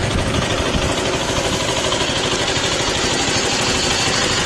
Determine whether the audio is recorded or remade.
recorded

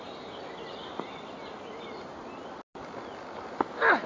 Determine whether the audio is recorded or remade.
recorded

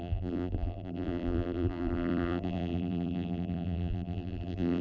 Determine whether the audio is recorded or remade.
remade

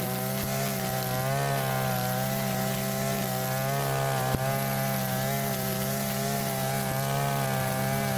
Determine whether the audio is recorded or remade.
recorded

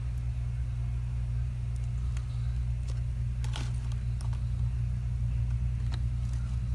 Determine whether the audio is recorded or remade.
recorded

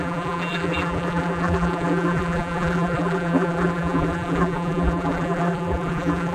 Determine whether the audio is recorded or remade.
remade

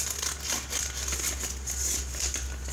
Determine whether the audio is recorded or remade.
recorded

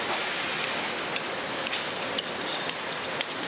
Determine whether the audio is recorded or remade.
recorded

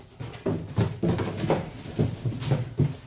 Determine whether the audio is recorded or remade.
recorded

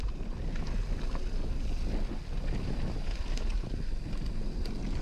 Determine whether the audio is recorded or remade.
recorded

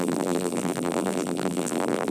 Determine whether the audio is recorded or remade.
remade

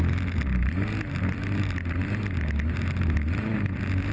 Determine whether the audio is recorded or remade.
recorded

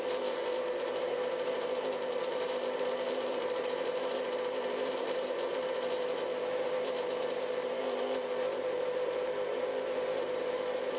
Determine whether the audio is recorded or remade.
remade